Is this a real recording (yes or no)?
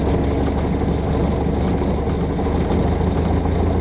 yes